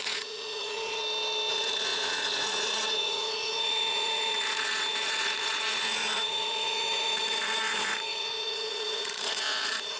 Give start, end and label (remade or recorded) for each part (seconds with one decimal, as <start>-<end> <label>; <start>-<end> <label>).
0.0-1.0 remade; 1.0-1.5 recorded; 1.5-10.0 remade